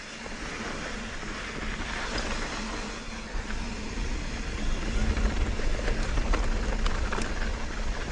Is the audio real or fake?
real